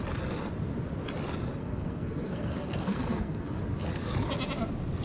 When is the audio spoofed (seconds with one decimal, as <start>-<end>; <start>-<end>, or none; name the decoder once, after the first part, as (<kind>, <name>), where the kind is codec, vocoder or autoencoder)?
1.6-3.6 (codec, SNAC)